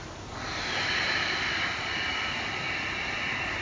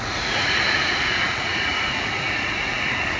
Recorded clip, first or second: first